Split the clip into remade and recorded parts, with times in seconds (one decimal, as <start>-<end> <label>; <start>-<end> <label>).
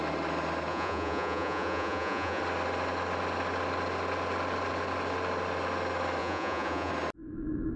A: 0.0-0.7 recorded; 0.7-2.4 remade; 2.4-6.2 recorded; 6.2-6.9 remade; 6.9-7.8 recorded